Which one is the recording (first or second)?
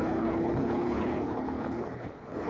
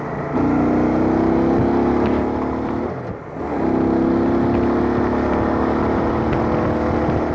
second